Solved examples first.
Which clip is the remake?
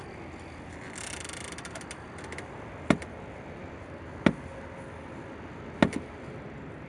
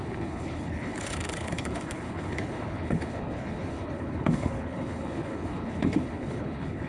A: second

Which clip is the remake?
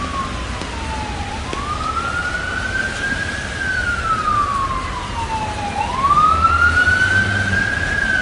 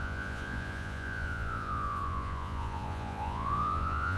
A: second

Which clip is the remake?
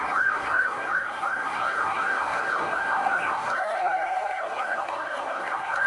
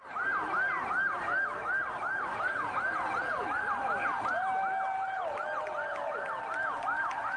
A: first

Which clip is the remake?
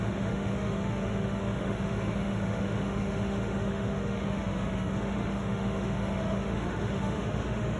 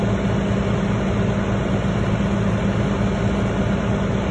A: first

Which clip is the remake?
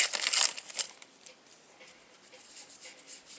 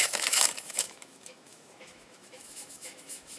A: second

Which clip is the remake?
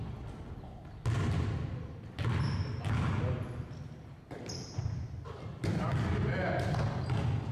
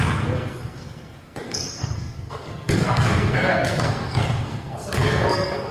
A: second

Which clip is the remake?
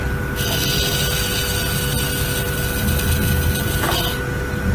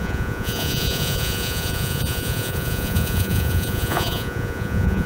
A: second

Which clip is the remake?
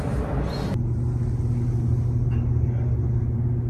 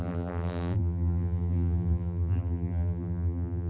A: second